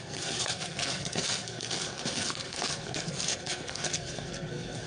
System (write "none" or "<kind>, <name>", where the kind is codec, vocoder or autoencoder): codec, SNAC